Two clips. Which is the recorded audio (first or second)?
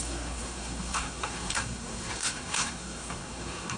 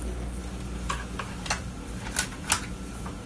second